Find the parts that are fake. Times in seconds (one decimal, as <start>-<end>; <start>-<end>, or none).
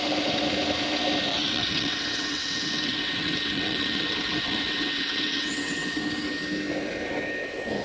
1.3-6.0